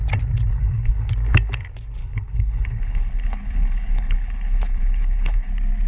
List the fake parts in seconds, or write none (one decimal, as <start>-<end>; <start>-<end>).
0.5-1.1; 2.0-5.5